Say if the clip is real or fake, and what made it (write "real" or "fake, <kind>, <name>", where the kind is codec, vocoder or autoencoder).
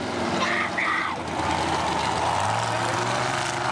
real